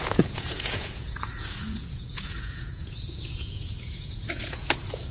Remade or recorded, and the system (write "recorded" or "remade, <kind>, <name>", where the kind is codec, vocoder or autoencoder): remade, vocoder, Vocos